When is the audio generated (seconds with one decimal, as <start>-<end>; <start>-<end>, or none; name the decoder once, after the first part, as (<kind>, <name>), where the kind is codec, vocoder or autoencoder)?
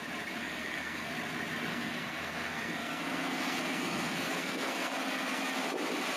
0.4-1.1 (codec, SNAC); 1.7-5.4